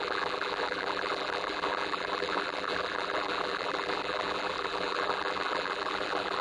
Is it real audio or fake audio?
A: fake